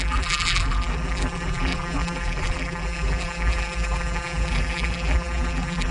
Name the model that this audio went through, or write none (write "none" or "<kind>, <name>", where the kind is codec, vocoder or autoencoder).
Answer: vocoder, BigVGAN v2